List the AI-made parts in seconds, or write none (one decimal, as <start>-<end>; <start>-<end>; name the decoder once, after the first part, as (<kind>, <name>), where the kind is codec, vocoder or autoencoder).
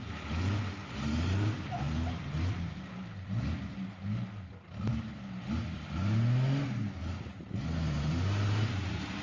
none